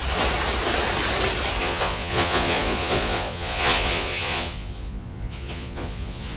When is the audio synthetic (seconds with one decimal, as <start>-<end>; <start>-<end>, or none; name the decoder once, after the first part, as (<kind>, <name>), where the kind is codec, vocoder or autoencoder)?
1.6-6.4 (vocoder, Vocos)